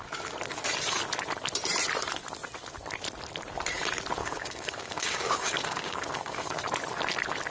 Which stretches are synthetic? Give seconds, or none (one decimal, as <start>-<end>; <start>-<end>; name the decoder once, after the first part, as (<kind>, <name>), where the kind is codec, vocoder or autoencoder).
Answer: 4.2-6.6 (codec, DAC)